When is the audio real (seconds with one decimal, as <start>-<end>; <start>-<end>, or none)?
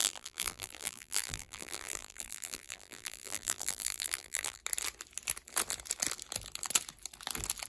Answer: 4.6-7.7